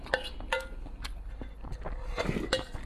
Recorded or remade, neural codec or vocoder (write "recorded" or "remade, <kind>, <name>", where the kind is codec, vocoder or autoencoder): recorded